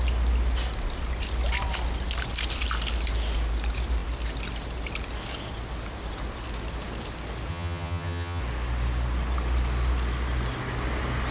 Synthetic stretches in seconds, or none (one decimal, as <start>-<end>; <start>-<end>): 7.5-8.4